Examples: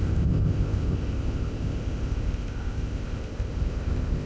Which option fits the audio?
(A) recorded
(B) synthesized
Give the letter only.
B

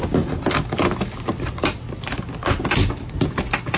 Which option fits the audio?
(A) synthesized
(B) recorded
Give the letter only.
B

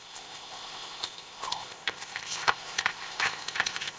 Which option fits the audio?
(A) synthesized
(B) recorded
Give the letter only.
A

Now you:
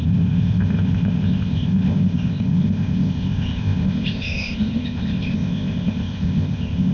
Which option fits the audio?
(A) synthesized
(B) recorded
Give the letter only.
A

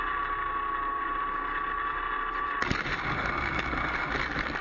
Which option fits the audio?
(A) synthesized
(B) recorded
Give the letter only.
B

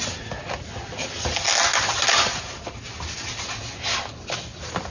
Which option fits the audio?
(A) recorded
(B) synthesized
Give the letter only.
A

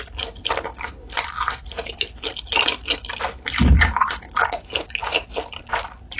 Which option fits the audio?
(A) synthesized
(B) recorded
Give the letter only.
B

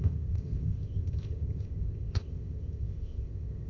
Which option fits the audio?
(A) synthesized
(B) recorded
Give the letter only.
A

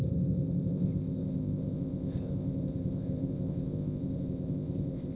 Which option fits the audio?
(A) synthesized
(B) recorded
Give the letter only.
A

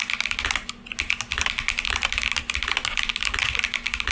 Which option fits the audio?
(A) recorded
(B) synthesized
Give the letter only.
A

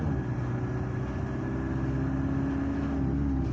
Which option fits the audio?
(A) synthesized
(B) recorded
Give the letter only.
B